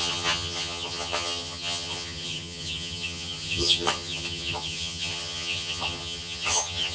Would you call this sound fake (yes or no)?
yes